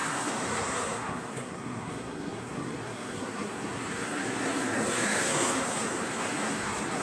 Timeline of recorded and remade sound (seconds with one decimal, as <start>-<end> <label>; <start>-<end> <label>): 0.0-7.0 remade